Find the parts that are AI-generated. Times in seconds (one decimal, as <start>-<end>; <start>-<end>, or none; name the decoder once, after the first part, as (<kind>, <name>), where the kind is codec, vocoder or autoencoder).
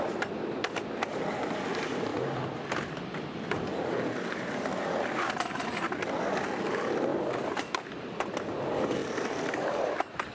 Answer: 2.1-6.1 (vocoder, BigVGAN v2); 7.1-8.1